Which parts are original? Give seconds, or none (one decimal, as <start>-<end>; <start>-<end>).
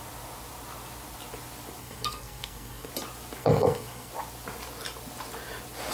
0.0-1.8; 2.9-3.4; 4.1-5.9